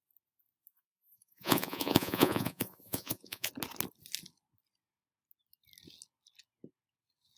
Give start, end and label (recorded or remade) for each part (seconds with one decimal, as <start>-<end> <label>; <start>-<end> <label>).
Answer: 0.0-0.7 recorded; 0.7-3.5 remade; 3.5-7.4 recorded